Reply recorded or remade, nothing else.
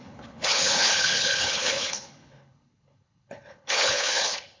remade